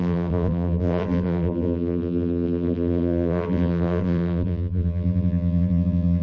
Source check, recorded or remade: remade